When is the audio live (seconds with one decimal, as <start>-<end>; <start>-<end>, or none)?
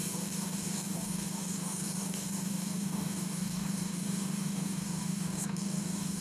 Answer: none